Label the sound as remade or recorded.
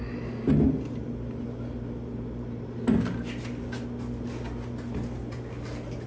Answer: recorded